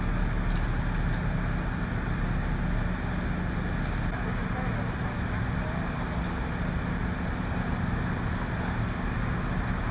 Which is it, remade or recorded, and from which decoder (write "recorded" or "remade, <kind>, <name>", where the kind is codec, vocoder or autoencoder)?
recorded